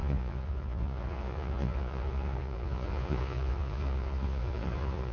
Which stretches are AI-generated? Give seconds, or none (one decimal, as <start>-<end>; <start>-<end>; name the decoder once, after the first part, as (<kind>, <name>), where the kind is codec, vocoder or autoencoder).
0.0-5.1 (vocoder, Vocos)